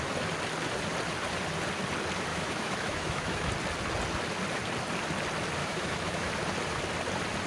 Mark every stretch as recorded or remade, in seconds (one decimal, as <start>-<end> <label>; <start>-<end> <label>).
0.0-2.3 recorded; 2.3-3.5 remade; 3.5-5.6 recorded; 5.6-6.3 remade; 6.3-7.5 recorded